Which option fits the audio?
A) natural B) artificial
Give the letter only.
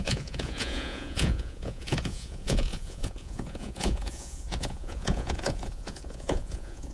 B